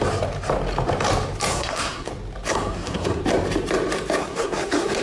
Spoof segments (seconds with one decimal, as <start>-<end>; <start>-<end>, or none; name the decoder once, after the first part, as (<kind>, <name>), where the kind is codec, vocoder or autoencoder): 1.5-2.1 (codec, SNAC); 2.5-3.2; 4.2-5.0